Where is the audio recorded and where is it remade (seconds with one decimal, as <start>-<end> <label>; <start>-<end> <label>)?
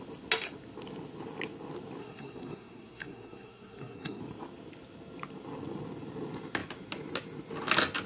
0.0-2.0 recorded; 2.0-4.2 remade; 4.2-8.1 recorded